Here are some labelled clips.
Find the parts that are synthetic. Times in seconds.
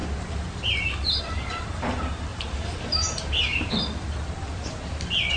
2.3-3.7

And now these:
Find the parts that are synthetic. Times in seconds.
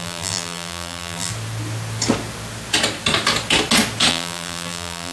0.0-1.3; 4.1-5.1